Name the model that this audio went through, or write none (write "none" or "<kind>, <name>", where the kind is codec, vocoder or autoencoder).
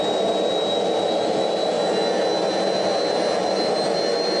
none